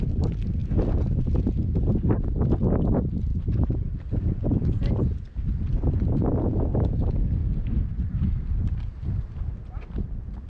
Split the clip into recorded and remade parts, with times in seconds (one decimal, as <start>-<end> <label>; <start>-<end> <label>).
0.0-3.3 recorded; 3.3-5.0 remade; 5.0-7.4 recorded; 7.4-8.7 remade; 8.7-10.5 recorded